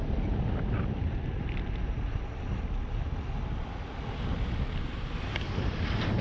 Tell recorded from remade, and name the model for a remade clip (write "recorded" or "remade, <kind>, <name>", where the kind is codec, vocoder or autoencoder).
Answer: recorded